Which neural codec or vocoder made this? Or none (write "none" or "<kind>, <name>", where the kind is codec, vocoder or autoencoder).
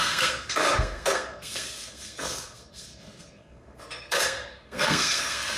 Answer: codec, SNAC